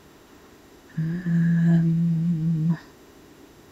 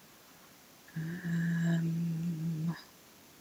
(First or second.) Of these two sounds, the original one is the second